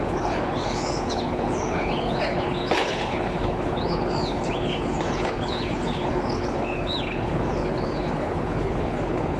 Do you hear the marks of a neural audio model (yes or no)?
yes